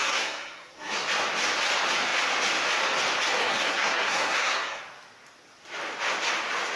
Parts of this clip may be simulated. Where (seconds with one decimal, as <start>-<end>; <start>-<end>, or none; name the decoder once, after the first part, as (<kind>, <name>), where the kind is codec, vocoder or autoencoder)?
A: 0.0-1.1 (codec, SNAC); 3.4-4.8